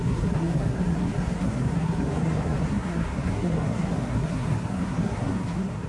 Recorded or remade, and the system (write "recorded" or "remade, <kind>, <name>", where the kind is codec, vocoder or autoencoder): remade, codec, SNAC